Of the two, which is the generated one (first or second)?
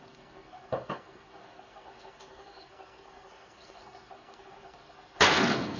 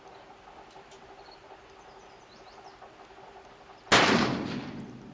first